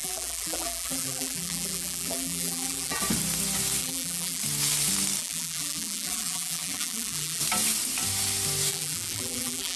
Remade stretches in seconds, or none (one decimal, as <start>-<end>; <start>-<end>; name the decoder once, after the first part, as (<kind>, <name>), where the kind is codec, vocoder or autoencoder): 0.0-3.0 (vocoder, BigVGAN v2); 3.8-4.4; 5.2-7.4; 8.7-9.8